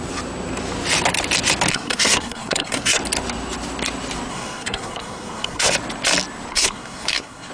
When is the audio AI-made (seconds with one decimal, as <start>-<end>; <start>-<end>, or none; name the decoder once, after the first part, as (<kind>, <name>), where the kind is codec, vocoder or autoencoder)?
1.7-3.0 (codec, SNAC); 4.3-5.7; 6.5-7.5